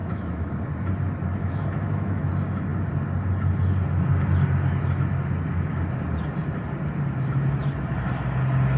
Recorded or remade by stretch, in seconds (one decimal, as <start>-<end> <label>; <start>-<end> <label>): 0.0-0.6 remade; 0.6-1.4 recorded; 1.4-2.3 remade; 2.3-8.8 recorded